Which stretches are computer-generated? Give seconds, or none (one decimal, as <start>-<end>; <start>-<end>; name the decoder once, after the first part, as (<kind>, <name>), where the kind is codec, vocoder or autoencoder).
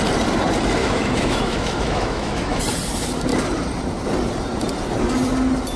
0.8-2.6 (autoencoder, DAC-VAE)